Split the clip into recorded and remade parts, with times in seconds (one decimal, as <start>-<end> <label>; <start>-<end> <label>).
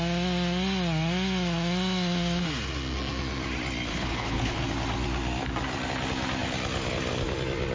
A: 0.0-3.9 recorded; 3.9-4.6 remade; 4.6-7.7 recorded